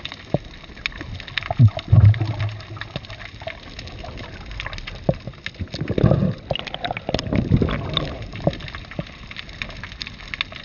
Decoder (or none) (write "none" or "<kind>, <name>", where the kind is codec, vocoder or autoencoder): none